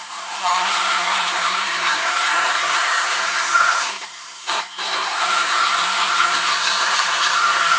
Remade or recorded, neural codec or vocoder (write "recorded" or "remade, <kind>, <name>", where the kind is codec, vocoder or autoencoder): remade, codec, SNAC